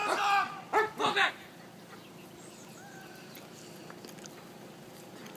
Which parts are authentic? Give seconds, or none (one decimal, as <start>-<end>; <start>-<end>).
0.0-5.4